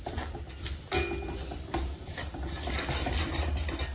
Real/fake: real